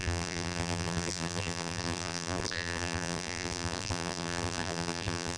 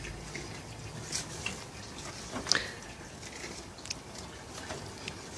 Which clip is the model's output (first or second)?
first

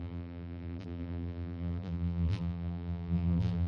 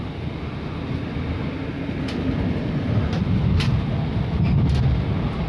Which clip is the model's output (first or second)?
first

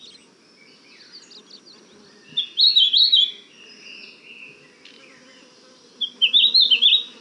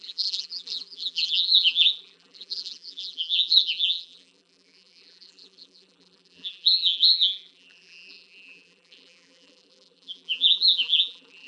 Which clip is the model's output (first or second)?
second